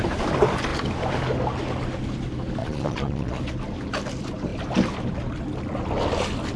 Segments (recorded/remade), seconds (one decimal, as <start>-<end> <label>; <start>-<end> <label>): 0.0-2.6 recorded; 2.6-3.4 remade; 3.4-6.6 recorded